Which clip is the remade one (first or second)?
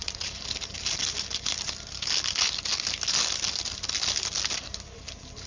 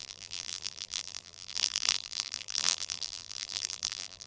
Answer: second